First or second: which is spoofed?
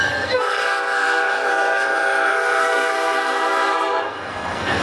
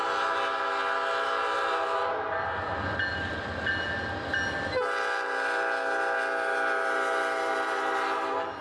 first